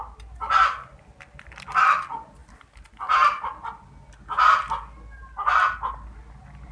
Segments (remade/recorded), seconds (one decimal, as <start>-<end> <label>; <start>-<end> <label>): 0.0-6.7 recorded